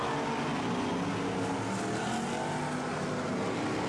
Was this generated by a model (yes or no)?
no